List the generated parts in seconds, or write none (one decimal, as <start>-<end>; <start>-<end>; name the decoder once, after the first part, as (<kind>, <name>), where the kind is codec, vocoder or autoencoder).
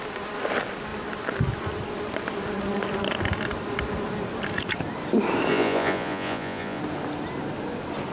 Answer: 5.5-6.8 (vocoder, Vocos)